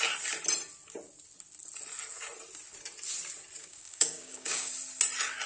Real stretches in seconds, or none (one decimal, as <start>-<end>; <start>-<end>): 0.0-3.6; 4.7-5.5